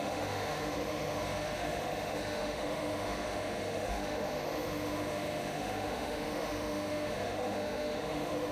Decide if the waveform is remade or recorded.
remade